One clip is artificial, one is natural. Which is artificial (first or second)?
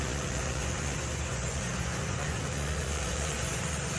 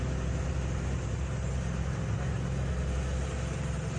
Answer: first